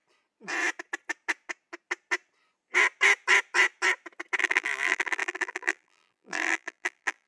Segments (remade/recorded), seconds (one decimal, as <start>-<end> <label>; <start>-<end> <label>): 0.0-4.4 recorded; 4.4-7.3 remade